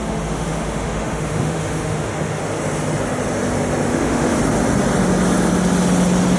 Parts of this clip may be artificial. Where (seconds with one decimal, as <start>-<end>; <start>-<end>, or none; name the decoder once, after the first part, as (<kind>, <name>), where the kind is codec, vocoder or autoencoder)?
0.0-2.4 (autoencoder, DAC-VAE); 3.9-4.4